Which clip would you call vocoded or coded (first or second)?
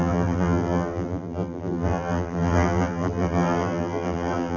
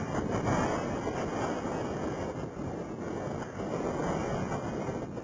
first